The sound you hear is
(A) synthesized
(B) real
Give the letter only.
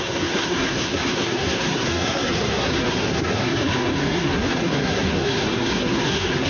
A